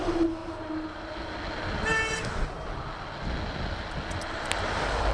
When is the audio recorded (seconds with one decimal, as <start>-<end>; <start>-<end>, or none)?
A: 0.0-0.4; 1.1-5.1